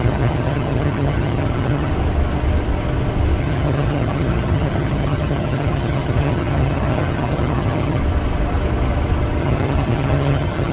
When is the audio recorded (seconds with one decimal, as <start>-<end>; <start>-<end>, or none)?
1.9-3.4; 8.0-9.4

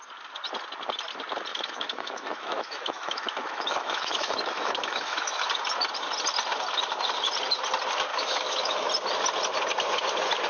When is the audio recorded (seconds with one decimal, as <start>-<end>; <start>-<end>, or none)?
0.0-1.5; 5.4-8.1; 8.9-10.5

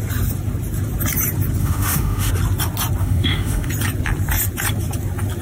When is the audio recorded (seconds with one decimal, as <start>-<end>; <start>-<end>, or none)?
0.0-1.6; 2.3-3.0; 3.7-5.4